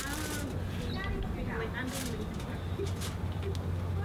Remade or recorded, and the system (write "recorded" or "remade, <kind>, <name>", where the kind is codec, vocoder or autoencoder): recorded